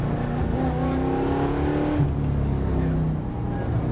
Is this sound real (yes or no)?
yes